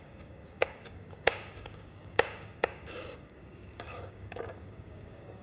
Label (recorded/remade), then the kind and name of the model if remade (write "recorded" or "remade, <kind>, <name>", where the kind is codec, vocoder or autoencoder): remade, codec, DAC